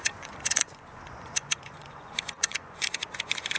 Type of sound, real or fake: fake